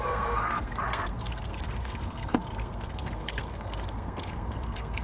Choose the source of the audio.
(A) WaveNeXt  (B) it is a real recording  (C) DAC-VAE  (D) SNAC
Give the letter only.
D